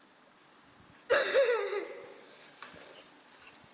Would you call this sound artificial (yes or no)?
no